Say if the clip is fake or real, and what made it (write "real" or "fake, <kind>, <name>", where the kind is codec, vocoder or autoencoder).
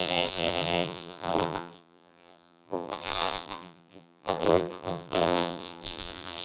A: fake, vocoder, BigVGAN v2